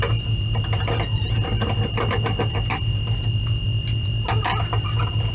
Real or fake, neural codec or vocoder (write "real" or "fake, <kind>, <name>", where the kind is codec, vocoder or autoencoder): real